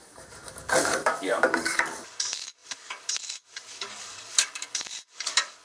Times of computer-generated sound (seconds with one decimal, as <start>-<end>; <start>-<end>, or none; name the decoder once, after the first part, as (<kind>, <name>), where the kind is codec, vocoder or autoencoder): 0.0-5.6 (codec, DAC)